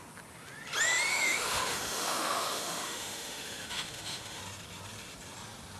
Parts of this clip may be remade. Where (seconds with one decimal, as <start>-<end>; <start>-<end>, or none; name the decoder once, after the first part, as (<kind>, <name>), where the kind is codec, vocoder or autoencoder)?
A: 1.1-4.4 (autoencoder, DAC-VAE)